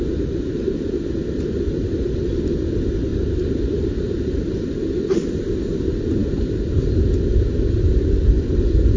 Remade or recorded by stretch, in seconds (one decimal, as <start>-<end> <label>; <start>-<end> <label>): 0.0-3.1 recorded; 3.1-5.0 remade; 5.0-9.0 recorded